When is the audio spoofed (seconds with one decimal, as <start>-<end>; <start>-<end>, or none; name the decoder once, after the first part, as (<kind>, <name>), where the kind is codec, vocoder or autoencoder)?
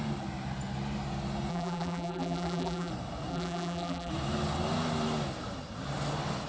1.5-2.9 (vocoder, BigVGAN v2); 3.3-4.1